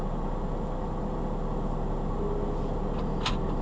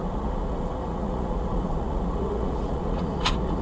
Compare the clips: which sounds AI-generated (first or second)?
second